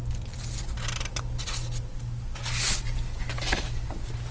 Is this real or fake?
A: real